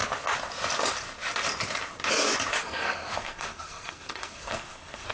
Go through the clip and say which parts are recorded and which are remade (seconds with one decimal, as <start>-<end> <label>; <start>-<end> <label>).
0.0-2.6 recorded; 2.6-5.1 remade